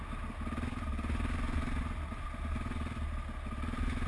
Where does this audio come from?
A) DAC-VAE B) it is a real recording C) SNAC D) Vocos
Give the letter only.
B